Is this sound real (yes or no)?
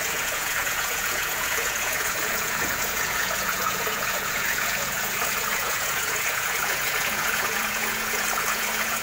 no